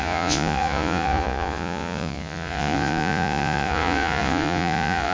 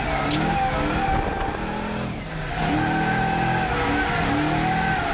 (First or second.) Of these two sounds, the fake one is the first